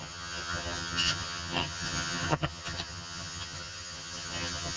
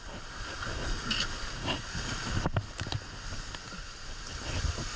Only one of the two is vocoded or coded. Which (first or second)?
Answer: first